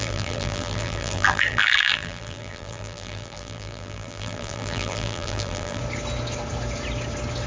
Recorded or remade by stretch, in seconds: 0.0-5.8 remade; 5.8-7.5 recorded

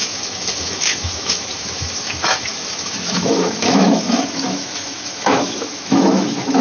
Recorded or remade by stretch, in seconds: 0.0-6.6 remade

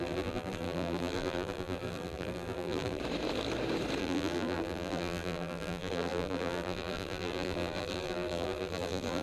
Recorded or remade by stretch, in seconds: 0.0-3.0 remade; 3.0-4.0 recorded; 4.0-9.2 remade

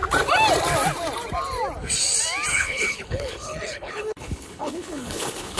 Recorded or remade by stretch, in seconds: 0.0-2.5 recorded; 2.5-5.6 remade

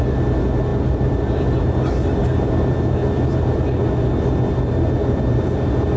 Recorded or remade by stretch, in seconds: 0.0-6.0 recorded

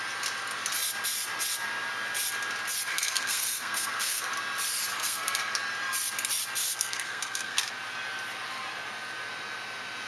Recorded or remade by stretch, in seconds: 0.0-2.9 recorded; 2.9-4.3 remade; 4.3-4.9 recorded; 4.9-5.6 remade; 5.6-6.6 recorded; 6.6-7.7 remade; 7.7-10.1 recorded

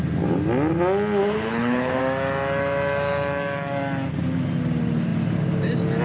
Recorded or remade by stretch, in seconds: 0.0-1.2 recorded; 1.2-2.0 remade; 2.0-6.0 recorded